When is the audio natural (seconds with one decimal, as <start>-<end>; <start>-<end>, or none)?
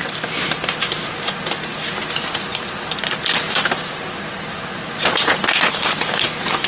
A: 0.0-6.7